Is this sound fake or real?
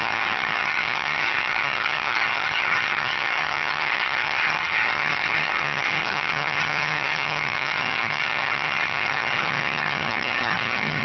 fake